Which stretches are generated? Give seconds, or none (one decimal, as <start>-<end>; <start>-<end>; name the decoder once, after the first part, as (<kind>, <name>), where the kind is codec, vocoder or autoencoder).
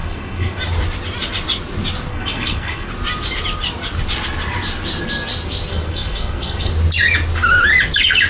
0.0-0.6 (codec, SNAC); 2.1-2.9; 5.7-6.7